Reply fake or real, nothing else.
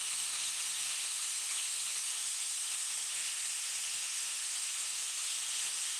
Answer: fake